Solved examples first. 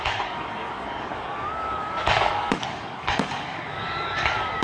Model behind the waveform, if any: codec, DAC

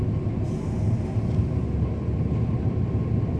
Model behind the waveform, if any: none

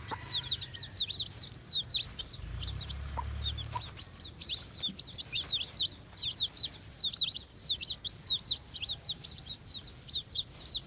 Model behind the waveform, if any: none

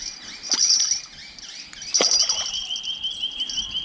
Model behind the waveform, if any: none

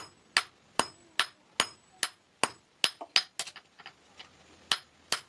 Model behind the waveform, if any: none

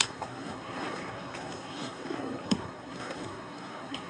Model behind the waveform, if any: codec, SNAC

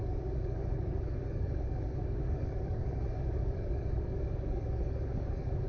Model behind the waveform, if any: codec, DAC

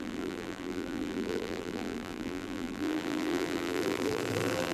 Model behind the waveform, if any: vocoder, BigVGAN v2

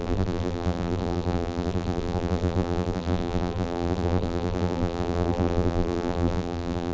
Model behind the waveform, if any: vocoder, BigVGAN v2